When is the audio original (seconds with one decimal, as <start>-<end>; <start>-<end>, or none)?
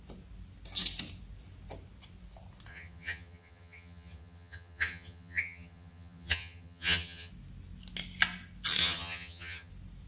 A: 0.0-2.7; 7.3-8.8; 9.7-10.1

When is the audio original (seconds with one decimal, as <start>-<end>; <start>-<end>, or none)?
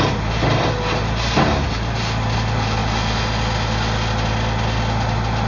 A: 0.0-5.5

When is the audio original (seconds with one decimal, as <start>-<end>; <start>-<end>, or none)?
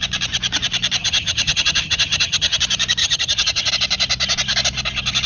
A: 0.0-1.0; 2.6-3.0; 3.7-5.3